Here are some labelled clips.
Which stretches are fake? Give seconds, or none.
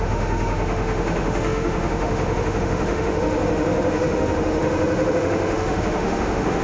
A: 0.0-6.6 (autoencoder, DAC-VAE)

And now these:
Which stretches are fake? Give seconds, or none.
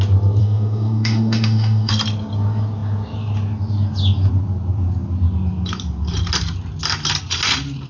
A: 0.4-1.9 (autoencoder, DAC-VAE)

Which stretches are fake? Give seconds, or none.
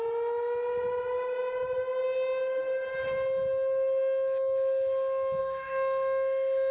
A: 5.4-6.7 (autoencoder, DAC-VAE)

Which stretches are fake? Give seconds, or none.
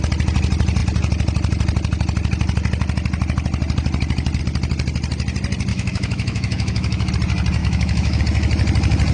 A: 5.7-7.1 (autoencoder, DAC-VAE); 7.6-8.2